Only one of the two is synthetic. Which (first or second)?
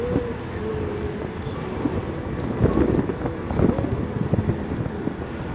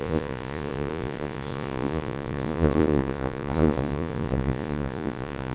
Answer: second